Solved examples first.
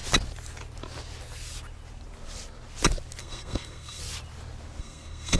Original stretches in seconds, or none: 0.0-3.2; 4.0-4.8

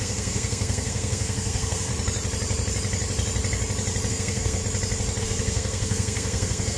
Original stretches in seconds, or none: 1.9-4.1; 4.6-5.2

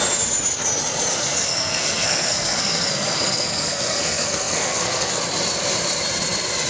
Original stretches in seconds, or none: 0.0-1.2; 5.2-6.7

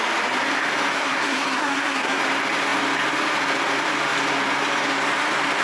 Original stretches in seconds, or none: 0.0-0.9; 2.2-5.6

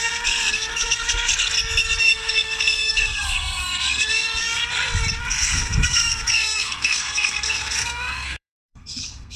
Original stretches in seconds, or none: 1.3-2.0; 4.6-5.2